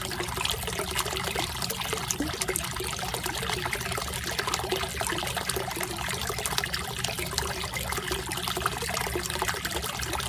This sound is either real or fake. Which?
real